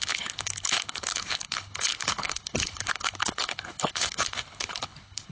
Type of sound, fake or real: fake